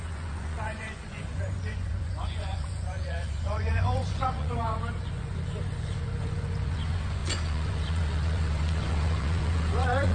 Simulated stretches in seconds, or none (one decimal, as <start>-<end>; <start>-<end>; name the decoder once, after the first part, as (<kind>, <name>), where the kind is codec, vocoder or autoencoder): 0.0-10.1 (vocoder, Vocos)